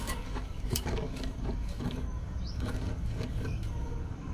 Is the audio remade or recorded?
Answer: remade